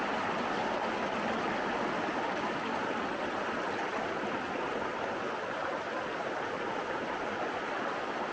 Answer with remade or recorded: recorded